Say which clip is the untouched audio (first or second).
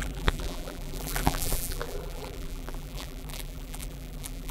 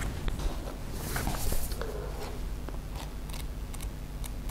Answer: second